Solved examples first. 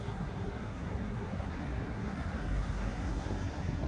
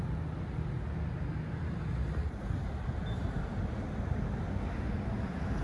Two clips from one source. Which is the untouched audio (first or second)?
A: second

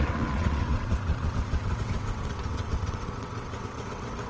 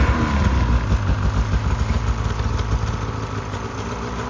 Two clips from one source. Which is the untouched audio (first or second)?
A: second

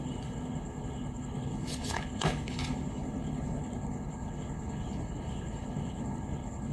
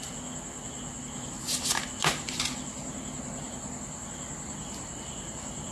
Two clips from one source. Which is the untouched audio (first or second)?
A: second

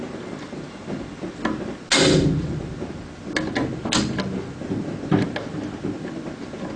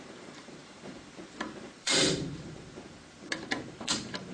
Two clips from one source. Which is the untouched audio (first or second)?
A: first